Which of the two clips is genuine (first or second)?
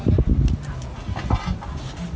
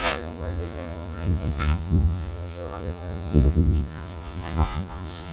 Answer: first